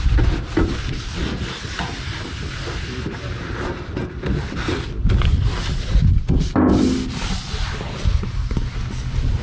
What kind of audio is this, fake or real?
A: real